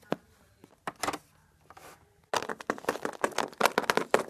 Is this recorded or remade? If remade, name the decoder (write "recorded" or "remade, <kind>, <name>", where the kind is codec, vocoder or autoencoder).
recorded